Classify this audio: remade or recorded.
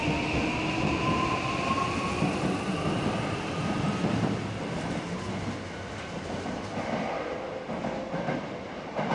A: recorded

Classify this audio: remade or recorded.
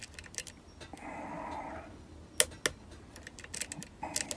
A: recorded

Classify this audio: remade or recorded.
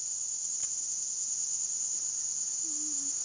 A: recorded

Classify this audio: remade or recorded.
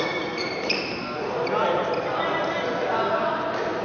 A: recorded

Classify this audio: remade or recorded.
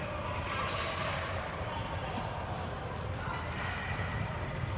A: recorded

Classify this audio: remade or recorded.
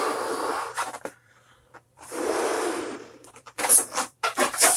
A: remade